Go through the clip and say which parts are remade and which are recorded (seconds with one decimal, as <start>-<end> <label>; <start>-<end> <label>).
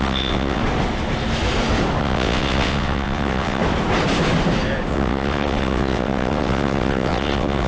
0.0-0.6 remade; 0.6-2.0 recorded; 2.0-3.6 remade; 3.6-4.9 recorded; 4.9-7.7 remade